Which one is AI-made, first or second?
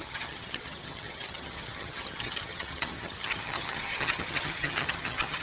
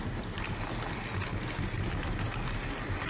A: first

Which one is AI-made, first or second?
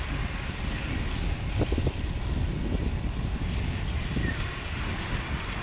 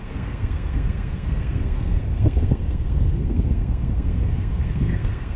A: second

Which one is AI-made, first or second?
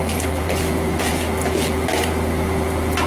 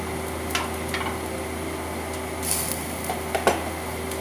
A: first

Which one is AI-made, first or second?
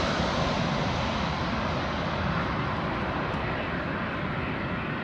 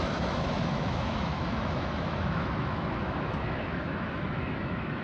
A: second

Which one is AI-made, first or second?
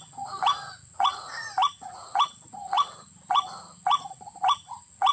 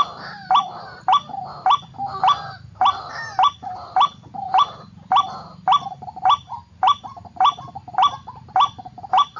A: first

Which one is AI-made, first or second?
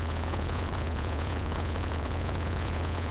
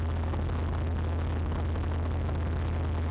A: first